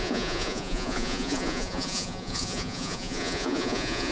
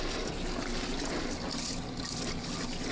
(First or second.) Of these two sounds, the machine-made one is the first